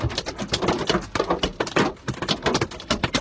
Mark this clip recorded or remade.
recorded